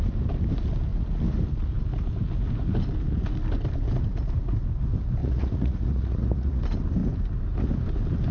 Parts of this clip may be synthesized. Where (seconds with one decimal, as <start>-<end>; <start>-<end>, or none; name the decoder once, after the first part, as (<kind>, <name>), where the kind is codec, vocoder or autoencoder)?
5.2-6.6 (vocoder, Vocos)